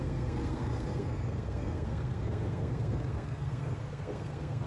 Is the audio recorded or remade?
remade